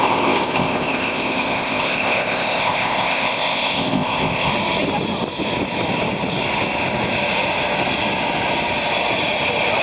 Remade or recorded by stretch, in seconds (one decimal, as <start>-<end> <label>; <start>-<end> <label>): 0.0-4.5 remade; 4.5-9.8 recorded